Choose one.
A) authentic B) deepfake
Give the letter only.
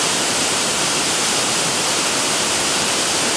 B